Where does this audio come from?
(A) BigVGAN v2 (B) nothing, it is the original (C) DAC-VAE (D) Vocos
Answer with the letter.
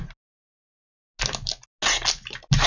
B